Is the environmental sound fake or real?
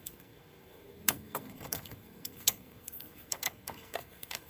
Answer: fake